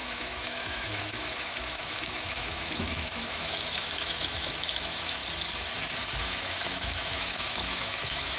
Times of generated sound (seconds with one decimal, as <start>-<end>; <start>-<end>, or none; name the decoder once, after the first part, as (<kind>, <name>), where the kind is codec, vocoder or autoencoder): 0.0-5.2 (autoencoder, DAC-VAE); 6.2-8.4